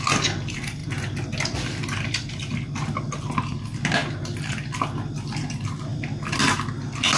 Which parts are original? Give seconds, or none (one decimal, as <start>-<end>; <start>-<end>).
0.0-7.2